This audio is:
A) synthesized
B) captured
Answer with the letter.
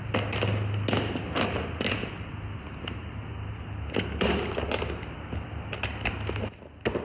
B